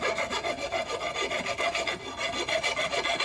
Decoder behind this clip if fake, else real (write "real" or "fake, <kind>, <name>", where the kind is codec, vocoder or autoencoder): real